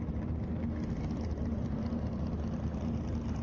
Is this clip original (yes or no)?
yes